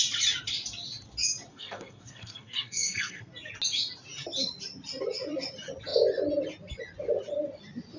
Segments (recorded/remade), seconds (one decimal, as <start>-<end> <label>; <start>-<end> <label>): 0.0-1.5 recorded; 1.5-3.3 remade; 3.3-8.0 recorded